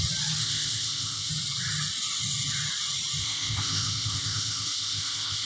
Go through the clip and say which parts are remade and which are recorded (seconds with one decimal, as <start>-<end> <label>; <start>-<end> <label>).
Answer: 0.0-0.4 recorded; 0.4-1.3 remade; 1.3-3.2 recorded; 3.2-5.5 remade